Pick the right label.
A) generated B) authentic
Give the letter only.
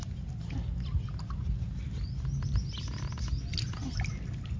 B